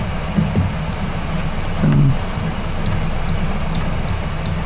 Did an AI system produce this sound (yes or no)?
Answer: no